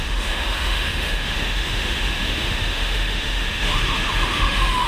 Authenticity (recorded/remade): remade